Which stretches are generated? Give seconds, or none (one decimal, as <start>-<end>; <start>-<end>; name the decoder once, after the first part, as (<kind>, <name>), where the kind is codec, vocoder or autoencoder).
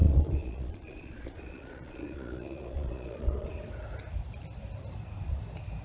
0.0-3.5 (vocoder, Vocos)